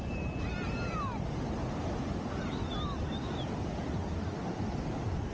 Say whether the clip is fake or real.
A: real